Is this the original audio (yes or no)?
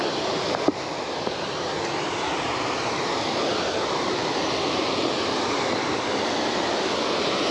no